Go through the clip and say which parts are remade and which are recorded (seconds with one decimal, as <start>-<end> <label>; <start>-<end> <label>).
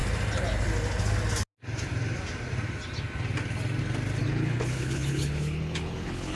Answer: 0.0-4.2 recorded; 4.2-6.4 remade